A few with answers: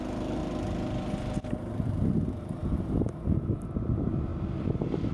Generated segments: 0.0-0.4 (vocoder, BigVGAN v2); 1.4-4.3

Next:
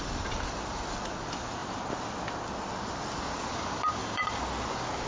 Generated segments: 4.0-4.5 (vocoder, BigVGAN v2)

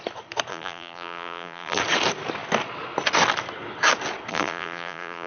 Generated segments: 0.5-1.8 (vocoder, BigVGAN v2); 4.3-5.3